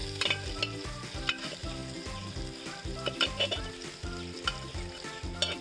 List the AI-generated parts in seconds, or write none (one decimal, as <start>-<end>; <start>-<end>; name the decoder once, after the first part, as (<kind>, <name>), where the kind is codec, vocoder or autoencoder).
none